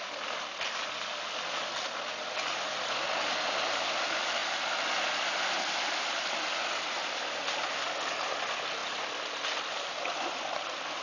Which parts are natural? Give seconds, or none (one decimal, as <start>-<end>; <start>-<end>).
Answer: 0.0-8.8